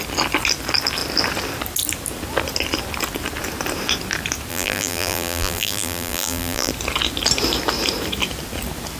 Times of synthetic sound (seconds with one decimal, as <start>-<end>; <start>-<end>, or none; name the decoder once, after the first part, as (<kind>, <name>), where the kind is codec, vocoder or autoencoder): 4.5-6.7 (vocoder, BigVGAN v2)

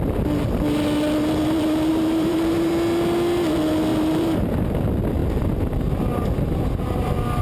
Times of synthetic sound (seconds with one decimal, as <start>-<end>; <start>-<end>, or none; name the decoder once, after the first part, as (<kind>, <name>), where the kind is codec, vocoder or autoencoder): 1.9-2.7 (vocoder, BigVGAN v2); 3.9-4.7

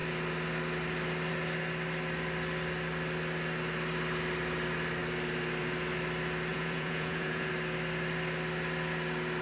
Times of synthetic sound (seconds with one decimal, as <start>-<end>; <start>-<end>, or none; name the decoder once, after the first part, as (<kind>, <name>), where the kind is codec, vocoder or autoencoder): 6.5-7.5 (vocoder, Vocos)

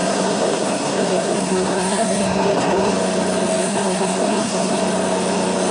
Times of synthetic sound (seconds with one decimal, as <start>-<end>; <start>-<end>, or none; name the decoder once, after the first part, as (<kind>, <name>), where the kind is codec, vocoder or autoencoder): 0.0-2.9 (codec, SNAC); 3.6-4.8

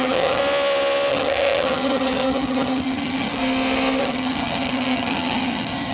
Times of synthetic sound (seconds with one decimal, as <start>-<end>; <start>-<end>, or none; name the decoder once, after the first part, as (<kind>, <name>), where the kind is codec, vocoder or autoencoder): 0.0-0.4 (vocoder, HiFi-GAN); 1.1-3.4; 4.0-5.9

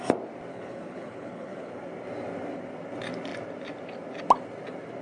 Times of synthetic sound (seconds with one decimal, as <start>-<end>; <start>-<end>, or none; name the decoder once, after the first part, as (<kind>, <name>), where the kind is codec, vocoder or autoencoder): 0.5-1.7 (codec, HILCodec)

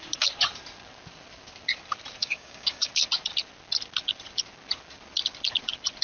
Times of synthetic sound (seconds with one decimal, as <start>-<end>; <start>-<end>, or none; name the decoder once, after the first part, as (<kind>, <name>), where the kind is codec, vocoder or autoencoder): 2.2-2.9 (codec, DAC)

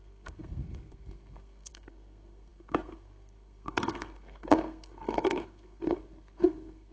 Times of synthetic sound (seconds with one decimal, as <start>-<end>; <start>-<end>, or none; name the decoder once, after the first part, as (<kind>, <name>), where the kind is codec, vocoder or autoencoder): 0.0-6.9 (codec, SNAC)